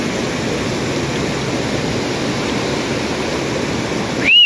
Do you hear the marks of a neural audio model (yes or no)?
no